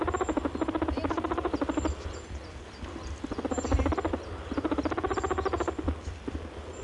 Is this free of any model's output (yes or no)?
yes